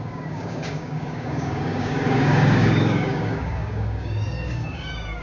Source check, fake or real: fake